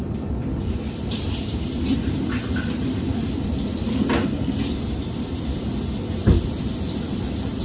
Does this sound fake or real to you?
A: fake